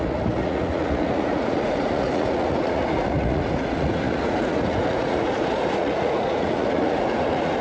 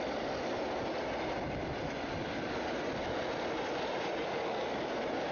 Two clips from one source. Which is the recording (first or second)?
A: second